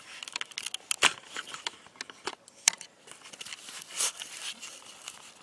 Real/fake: real